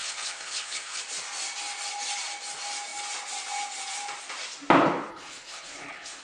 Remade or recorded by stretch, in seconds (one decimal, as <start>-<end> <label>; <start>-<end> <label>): 0.0-1.0 remade; 1.0-5.1 recorded; 5.1-6.2 remade